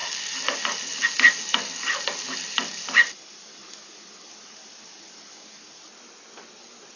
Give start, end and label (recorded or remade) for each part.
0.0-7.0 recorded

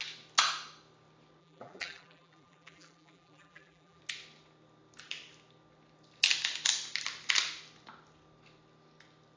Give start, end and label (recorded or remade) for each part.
0.0-1.4 recorded; 1.4-4.0 remade; 4.0-9.4 recorded

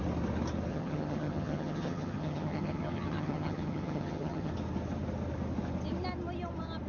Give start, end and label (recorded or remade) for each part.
0.0-0.7 recorded; 0.7-4.5 remade; 4.5-6.9 recorded

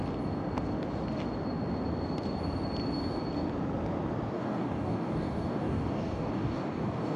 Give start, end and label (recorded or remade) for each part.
0.0-4.3 recorded; 4.3-7.2 remade